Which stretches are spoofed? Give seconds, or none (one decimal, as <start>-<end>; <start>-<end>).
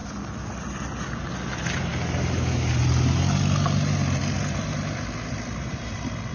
none